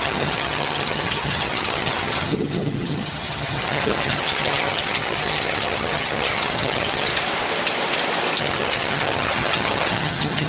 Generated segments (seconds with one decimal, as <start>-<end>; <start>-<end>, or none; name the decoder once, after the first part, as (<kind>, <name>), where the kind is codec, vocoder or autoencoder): 0.0-7.1 (vocoder, HiFi-GAN); 8.4-10.5

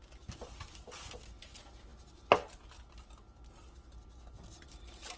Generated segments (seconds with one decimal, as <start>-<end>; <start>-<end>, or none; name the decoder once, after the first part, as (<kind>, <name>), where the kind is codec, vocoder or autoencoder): none

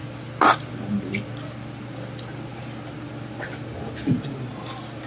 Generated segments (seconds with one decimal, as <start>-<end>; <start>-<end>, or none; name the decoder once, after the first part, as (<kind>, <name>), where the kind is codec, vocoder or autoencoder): none

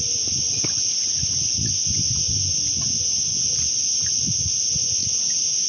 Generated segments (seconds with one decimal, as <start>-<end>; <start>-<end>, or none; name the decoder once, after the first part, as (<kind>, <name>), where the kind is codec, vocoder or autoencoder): none

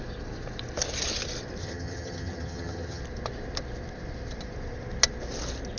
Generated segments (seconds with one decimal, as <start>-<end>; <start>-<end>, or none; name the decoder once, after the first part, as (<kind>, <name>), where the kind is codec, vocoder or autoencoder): 1.6-3.0 (vocoder, HiFi-GAN)